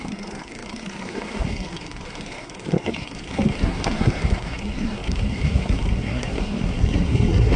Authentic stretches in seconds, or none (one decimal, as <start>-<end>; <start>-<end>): none